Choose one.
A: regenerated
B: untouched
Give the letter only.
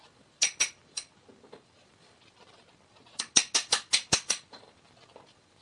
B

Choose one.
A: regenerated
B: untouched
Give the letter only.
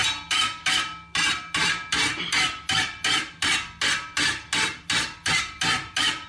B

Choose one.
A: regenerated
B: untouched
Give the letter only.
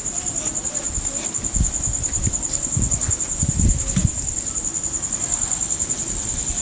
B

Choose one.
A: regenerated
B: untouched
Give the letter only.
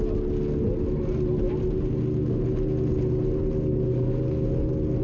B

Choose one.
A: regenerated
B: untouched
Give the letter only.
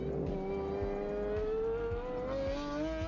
B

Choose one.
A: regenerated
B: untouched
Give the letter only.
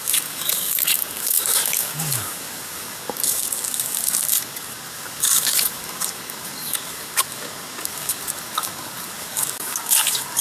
A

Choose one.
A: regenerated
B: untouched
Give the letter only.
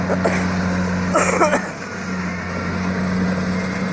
B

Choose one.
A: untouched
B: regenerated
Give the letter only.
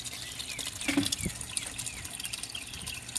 A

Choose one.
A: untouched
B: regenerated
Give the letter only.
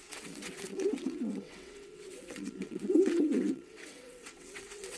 B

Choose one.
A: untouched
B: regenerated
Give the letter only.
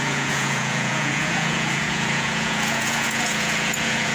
B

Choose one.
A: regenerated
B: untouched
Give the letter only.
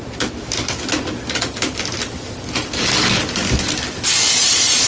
B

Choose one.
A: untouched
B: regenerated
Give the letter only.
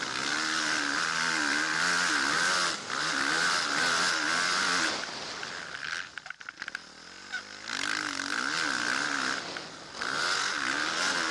A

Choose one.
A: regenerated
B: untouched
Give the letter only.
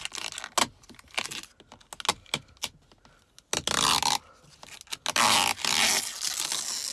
B